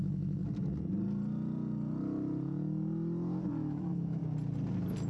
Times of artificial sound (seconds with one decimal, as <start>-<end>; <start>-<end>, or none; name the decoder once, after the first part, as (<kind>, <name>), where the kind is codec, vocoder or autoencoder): 0.0-0.4 (autoencoder, DAC-VAE); 3.5-4.2